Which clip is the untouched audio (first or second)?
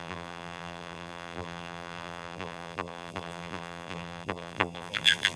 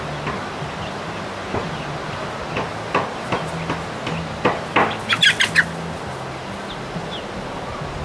second